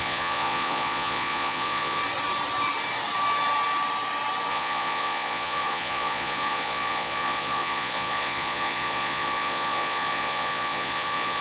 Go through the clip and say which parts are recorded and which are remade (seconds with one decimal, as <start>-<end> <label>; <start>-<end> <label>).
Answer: 0.0-2.0 remade; 2.0-4.5 recorded; 4.5-11.4 remade